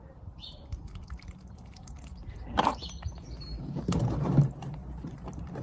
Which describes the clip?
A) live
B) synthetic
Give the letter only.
B